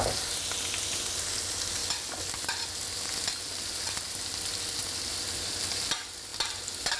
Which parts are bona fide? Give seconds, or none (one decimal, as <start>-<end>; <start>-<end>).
0.0-7.0